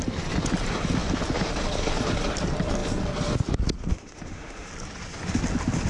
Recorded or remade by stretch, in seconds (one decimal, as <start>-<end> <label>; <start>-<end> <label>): 0.0-3.9 recorded; 3.9-4.7 remade; 4.7-5.9 recorded